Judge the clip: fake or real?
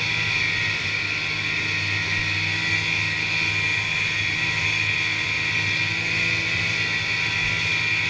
real